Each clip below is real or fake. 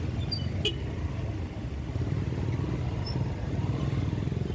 real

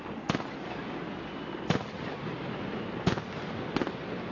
real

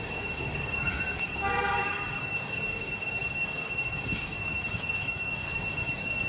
fake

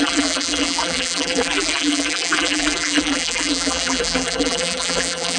fake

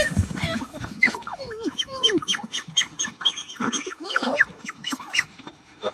fake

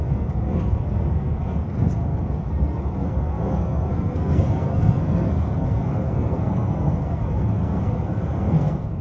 fake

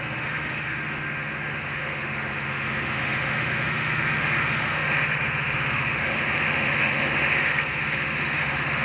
fake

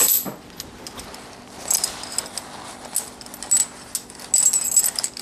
real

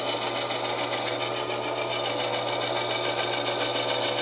real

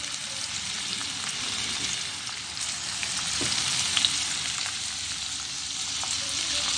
real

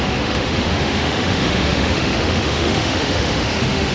fake